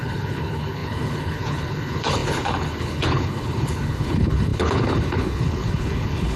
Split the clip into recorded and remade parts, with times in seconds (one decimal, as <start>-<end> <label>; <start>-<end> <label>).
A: 0.0-6.4 remade

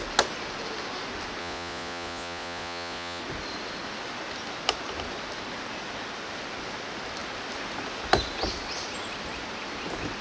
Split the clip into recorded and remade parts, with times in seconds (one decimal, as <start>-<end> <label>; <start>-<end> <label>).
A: 0.0-1.4 recorded; 1.4-3.2 remade; 3.2-10.2 recorded

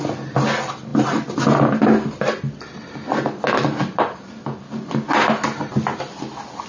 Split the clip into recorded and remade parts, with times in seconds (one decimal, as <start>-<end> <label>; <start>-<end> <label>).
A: 0.0-6.7 recorded

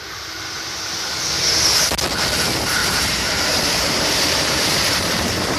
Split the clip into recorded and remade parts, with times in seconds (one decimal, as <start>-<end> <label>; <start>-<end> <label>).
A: 0.0-2.8 recorded; 2.8-5.6 remade

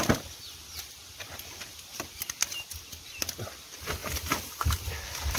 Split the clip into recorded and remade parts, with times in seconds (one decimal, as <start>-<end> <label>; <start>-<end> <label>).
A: 0.0-4.0 recorded; 4.0-4.7 remade; 4.7-5.4 recorded

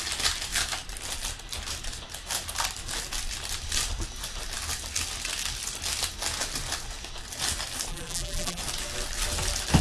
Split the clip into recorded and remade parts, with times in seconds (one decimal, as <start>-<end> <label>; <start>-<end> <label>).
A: 0.0-7.9 recorded; 7.9-8.6 remade; 8.6-9.8 recorded

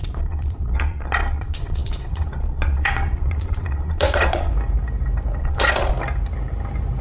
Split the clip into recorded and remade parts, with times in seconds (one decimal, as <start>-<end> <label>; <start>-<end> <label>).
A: 0.0-4.5 remade; 4.5-5.4 recorded; 5.4-5.9 remade; 5.9-7.0 recorded

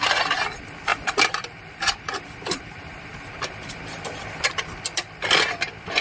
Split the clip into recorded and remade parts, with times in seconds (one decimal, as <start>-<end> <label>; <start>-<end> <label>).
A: 0.0-0.9 recorded; 0.9-4.5 remade; 4.5-6.0 recorded